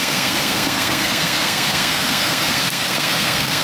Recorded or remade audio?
remade